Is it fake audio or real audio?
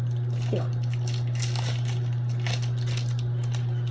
real